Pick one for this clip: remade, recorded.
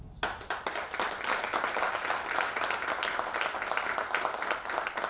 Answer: recorded